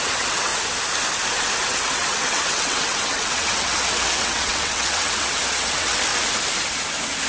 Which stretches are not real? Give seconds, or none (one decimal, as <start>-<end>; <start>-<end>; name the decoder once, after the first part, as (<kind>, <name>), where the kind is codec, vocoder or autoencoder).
0.0-0.5 (vocoder, WaveNeXt); 1.6-6.1

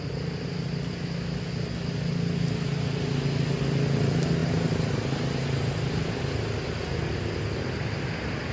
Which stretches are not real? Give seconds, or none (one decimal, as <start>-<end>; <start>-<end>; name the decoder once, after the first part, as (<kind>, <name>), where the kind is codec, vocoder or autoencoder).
none